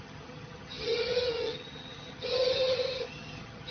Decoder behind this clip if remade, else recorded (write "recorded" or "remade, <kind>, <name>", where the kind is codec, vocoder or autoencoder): remade, vocoder, HiFi-GAN